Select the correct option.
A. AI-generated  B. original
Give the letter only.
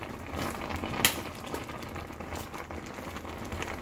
B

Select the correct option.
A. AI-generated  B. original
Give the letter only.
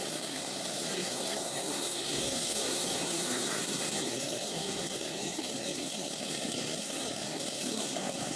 A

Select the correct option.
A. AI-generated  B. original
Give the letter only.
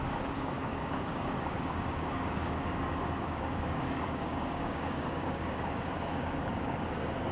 A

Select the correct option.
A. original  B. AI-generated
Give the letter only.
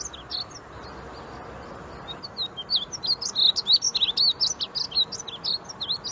A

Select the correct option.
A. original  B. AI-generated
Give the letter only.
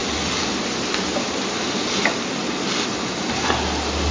A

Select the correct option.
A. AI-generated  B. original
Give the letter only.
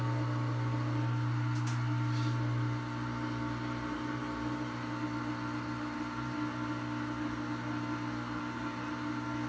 B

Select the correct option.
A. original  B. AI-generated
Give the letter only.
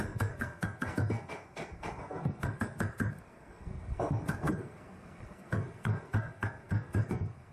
B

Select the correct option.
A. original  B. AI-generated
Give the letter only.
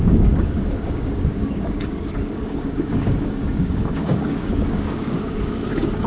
B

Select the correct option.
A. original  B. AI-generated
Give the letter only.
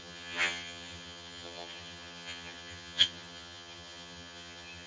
B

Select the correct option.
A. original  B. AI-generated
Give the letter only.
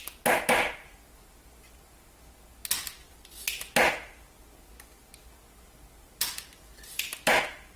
A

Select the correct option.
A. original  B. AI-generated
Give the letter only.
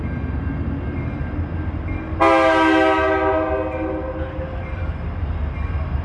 A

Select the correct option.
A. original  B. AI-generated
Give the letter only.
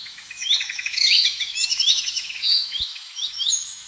B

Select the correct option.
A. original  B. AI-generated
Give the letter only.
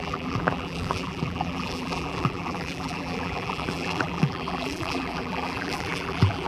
B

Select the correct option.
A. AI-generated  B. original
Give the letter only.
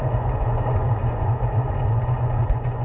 A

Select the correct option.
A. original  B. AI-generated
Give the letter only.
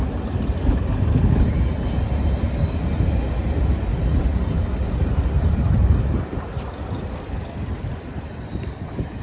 A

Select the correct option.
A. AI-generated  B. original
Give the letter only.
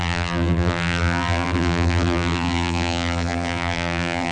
A